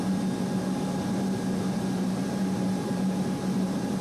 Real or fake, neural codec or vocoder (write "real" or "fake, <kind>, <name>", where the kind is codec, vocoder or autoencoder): real